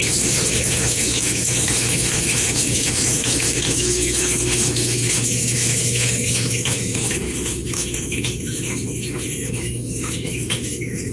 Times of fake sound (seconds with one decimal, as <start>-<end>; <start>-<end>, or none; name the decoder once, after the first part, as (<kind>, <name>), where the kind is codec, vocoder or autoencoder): 0.0-11.1 (autoencoder, DAC-VAE)